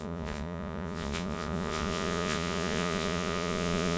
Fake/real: fake